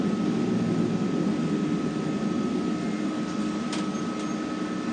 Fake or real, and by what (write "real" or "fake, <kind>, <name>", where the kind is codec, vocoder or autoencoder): real